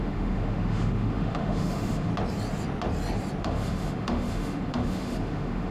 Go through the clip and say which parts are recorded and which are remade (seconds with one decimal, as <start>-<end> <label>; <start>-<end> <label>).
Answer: 0.0-2.1 remade; 2.1-3.4 recorded; 3.4-5.7 remade